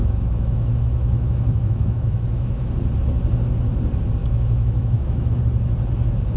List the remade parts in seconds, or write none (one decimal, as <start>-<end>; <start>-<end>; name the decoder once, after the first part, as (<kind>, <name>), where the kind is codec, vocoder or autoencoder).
0.0-2.7 (autoencoder, DAC-VAE); 4.2-5.4